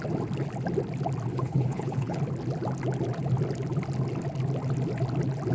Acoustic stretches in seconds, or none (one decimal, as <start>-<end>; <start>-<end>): 0.0-1.3; 2.2-5.5